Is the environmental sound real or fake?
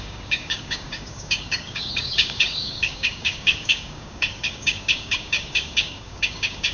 fake